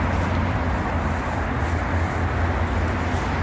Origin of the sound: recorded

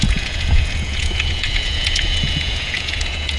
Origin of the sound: remade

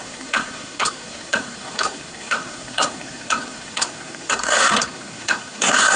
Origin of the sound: remade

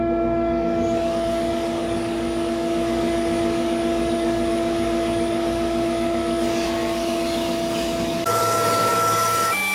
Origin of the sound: remade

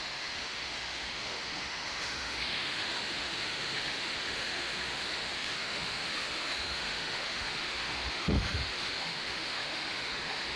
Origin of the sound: remade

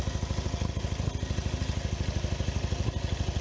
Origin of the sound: recorded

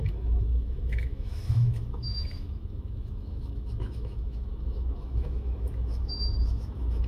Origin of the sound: remade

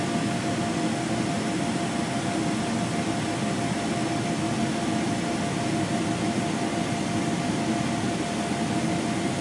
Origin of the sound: recorded